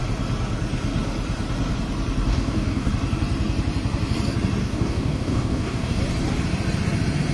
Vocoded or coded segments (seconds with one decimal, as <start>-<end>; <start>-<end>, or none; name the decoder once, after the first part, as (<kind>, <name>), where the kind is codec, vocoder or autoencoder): 2.3-2.9 (codec, DAC); 4.6-6.0